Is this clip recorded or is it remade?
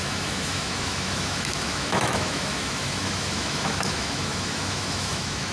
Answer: remade